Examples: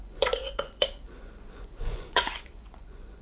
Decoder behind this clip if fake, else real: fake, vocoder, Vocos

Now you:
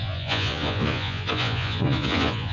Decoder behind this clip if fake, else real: fake, vocoder, Vocos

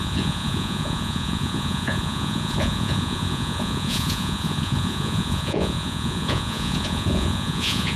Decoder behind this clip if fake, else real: fake, vocoder, Vocos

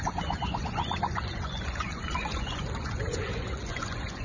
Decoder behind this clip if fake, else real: fake, vocoder, Vocos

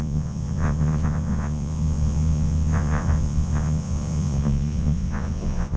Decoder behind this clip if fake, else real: fake, vocoder, Vocos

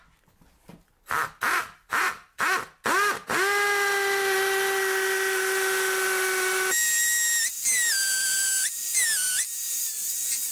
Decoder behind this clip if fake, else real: real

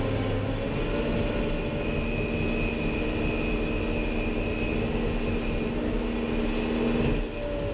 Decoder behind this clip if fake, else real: real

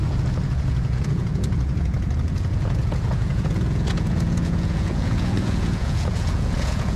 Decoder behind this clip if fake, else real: fake, vocoder, Vocos